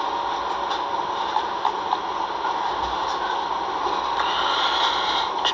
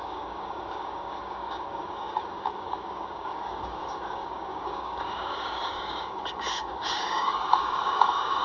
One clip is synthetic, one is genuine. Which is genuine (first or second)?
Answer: first